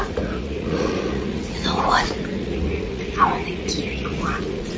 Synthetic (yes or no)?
yes